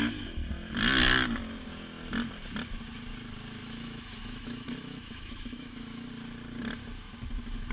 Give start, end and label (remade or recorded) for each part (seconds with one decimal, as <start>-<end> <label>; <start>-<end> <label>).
0.0-3.6 recorded; 3.6-6.1 remade; 6.1-7.7 recorded

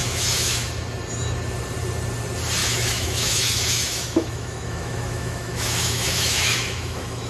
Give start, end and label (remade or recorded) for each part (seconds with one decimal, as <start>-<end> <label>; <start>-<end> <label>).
0.0-0.7 remade; 0.7-2.6 recorded; 2.6-7.3 remade

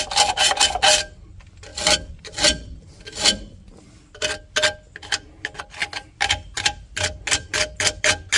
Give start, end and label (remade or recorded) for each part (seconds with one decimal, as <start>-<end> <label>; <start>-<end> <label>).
0.0-8.4 recorded

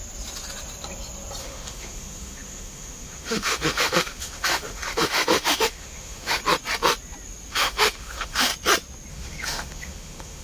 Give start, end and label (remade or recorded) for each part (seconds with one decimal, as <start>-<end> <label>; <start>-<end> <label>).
0.0-1.4 recorded; 1.4-6.4 remade; 6.4-7.5 recorded; 7.5-8.5 remade; 8.5-9.1 recorded; 9.1-10.4 remade

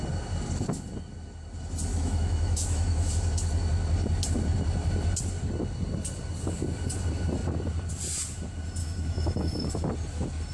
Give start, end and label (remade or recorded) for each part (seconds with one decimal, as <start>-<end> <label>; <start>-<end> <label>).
0.0-1.9 recorded; 1.9-3.1 remade; 3.1-8.8 recorded; 8.8-9.7 remade; 9.7-10.5 recorded

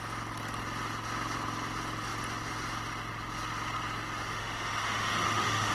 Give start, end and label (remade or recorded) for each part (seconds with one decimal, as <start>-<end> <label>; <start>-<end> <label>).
0.0-4.3 recorded; 4.3-5.7 remade